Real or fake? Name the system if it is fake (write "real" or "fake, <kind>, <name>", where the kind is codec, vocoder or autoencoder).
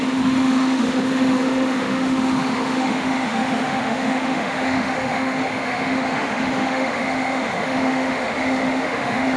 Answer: fake, autoencoder, DAC-VAE